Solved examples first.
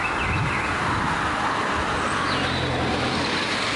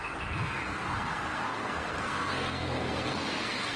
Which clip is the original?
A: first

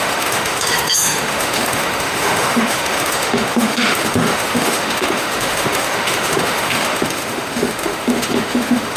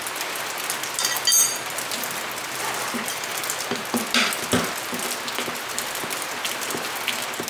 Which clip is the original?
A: second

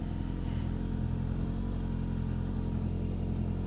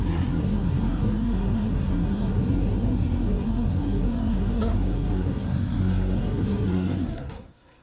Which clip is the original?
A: first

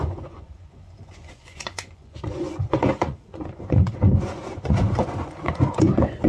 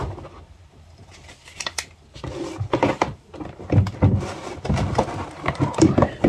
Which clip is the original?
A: second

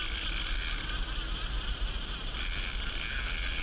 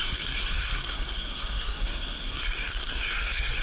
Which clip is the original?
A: first